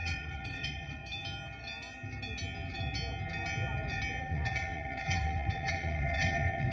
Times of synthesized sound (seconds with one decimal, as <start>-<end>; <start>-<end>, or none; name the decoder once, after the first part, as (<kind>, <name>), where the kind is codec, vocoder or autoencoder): 0.0-1.0 (vocoder, WaveNeXt); 4.2-6.7